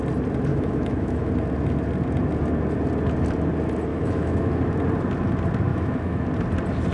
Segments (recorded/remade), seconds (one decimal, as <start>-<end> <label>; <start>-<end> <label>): 0.0-0.5 recorded; 0.5-1.3 remade; 1.3-3.9 recorded; 3.9-4.5 remade; 4.5-5.7 recorded; 5.7-6.2 remade; 6.2-6.9 recorded